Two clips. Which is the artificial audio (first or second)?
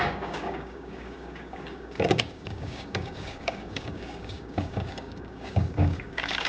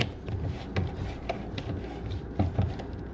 first